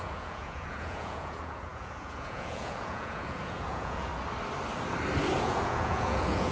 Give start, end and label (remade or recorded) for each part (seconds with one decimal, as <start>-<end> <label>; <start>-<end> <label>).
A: 0.0-4.1 remade; 4.1-5.4 recorded; 5.4-6.5 remade